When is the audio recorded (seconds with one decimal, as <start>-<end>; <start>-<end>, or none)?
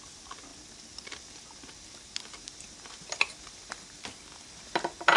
0.0-5.2